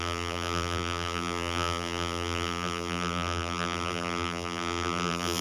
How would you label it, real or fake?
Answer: fake